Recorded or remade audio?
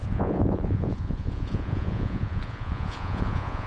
remade